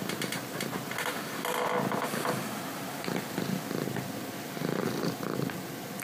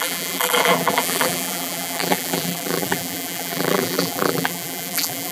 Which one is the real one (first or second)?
first